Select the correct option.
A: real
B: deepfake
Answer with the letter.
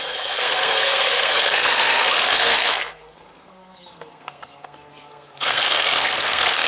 B